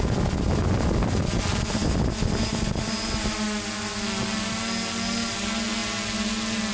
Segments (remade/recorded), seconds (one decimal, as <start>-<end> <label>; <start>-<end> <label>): 0.0-6.7 recorded